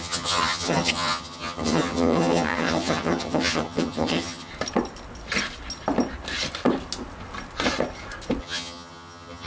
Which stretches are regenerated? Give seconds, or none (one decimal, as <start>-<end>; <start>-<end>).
0.0-4.5; 8.4-9.5